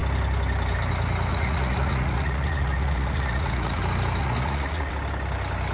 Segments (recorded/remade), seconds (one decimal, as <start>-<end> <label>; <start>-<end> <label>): 0.0-1.3 recorded; 1.3-3.8 remade; 3.8-4.2 recorded; 4.2-4.9 remade; 4.9-5.7 recorded

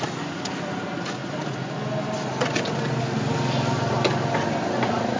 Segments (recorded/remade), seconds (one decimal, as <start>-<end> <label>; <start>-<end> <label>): 0.0-5.2 recorded

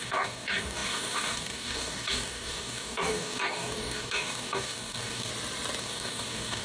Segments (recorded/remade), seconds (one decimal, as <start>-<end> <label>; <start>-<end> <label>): 0.0-5.3 remade; 5.3-5.8 recorded; 5.8-6.6 remade

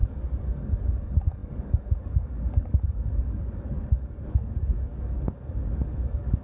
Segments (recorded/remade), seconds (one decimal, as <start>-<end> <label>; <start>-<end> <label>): 0.0-6.4 remade

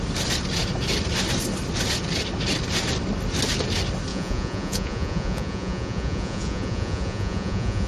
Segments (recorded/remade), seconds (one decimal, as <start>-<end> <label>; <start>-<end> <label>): 0.0-4.1 recorded; 4.1-7.9 remade

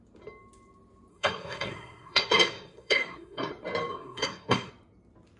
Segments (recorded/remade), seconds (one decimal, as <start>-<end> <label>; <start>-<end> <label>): 0.0-1.1 recorded; 1.1-3.5 remade; 3.5-3.9 recorded; 3.9-4.7 remade; 4.7-5.4 recorded